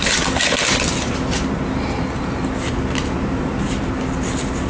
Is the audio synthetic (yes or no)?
no